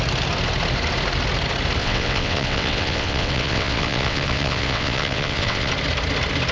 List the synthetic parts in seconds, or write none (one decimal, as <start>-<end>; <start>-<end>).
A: 1.8-5.7